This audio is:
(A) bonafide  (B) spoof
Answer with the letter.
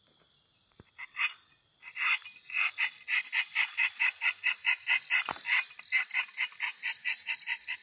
A